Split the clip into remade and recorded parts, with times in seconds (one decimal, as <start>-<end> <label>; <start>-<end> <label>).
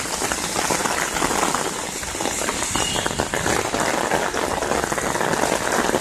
0.0-0.8 recorded; 0.8-2.5 remade; 2.5-6.0 recorded